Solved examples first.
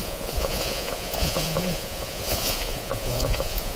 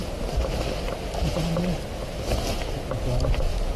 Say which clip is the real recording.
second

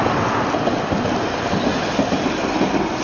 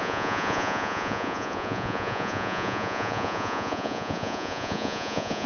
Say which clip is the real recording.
first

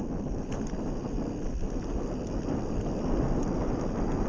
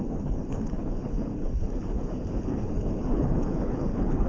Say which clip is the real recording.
first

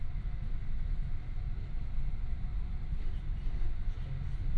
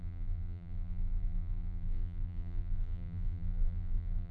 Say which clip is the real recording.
first